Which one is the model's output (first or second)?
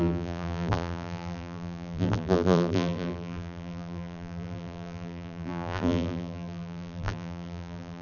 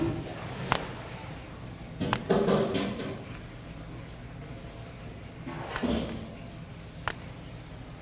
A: first